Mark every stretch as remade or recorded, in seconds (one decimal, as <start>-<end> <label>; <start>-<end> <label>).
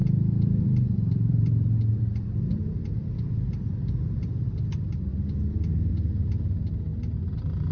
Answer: 0.0-2.9 remade; 2.9-7.7 recorded